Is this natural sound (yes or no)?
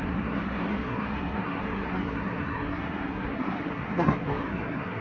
no